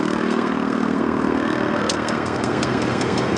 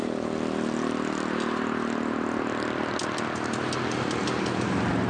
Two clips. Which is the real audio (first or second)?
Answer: second